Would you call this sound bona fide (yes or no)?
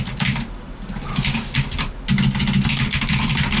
yes